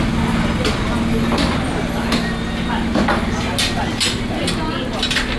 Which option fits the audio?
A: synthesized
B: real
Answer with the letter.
B